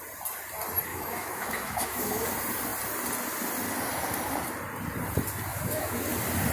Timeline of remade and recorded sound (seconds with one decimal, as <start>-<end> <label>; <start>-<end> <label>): 0.0-0.9 recorded; 0.9-2.3 remade; 2.3-5.5 recorded; 5.5-6.0 remade; 6.0-6.5 recorded

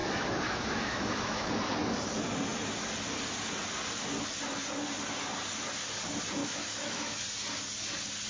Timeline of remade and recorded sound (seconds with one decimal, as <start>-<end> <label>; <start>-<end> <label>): 0.0-1.5 remade; 1.5-6.4 recorded; 6.4-7.2 remade; 7.2-8.3 recorded